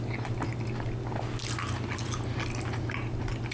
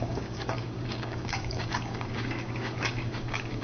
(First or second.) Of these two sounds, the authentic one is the first